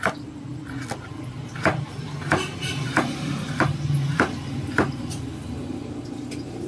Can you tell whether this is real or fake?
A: real